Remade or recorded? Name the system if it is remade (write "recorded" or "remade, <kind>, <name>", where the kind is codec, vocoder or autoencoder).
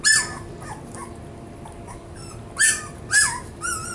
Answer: recorded